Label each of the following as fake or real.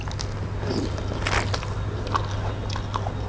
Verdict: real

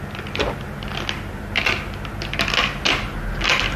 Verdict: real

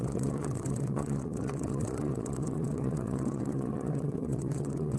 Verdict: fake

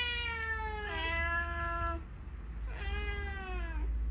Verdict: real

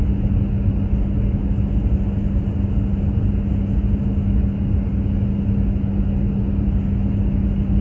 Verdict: real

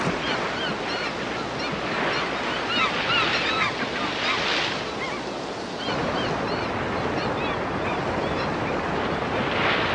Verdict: real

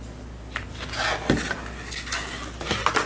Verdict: real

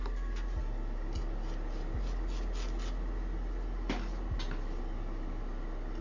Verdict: real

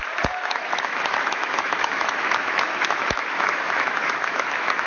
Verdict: fake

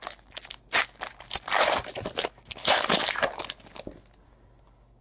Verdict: real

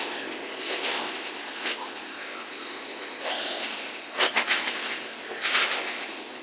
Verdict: fake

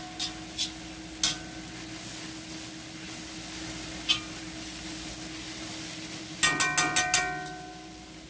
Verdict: real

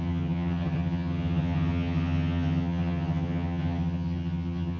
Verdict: fake